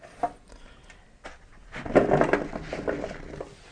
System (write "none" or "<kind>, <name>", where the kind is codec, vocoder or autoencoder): none